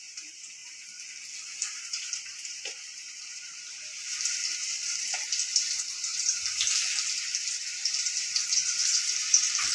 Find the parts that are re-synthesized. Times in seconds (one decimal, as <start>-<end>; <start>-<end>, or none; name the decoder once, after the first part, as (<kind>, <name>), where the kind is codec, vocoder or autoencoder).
0.0-0.6 (vocoder, BigVGAN v2); 1.7-9.7